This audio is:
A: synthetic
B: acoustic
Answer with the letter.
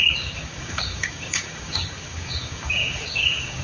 A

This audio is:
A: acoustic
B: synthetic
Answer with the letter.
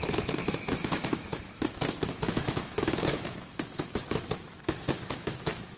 B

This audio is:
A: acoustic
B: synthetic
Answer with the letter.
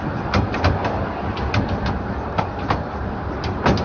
A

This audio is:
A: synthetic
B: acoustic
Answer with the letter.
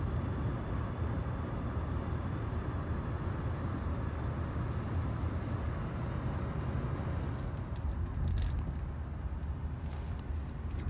B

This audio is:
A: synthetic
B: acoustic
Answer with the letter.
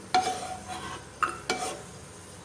B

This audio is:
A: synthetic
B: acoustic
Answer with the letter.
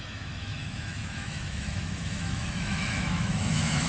A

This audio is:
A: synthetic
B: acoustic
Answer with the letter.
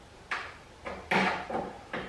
B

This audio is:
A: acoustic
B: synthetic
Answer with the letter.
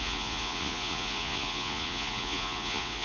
B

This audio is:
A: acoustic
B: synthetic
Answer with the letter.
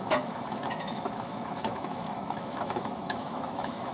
B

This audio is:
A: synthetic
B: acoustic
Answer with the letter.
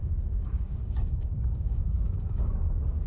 A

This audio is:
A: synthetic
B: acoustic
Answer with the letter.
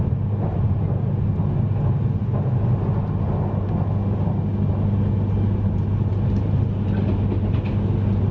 B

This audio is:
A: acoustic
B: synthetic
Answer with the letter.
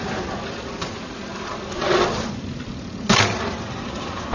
A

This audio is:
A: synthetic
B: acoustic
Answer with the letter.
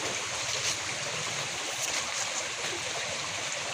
B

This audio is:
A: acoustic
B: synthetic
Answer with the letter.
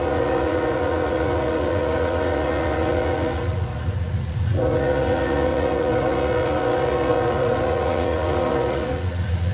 B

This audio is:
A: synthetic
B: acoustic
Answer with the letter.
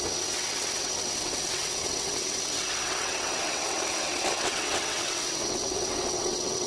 A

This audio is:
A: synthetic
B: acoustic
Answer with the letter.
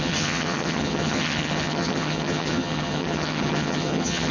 A